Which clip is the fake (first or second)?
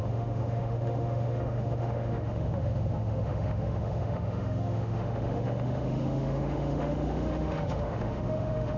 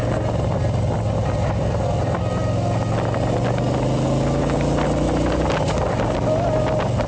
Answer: first